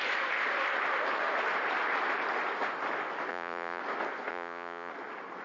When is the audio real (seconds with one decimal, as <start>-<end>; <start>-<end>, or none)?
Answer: 0.0-3.3; 3.8-4.3; 4.9-5.4